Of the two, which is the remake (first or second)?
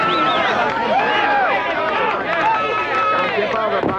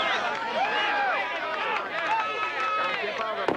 first